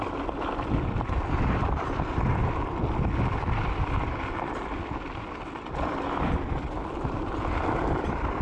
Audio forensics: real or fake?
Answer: fake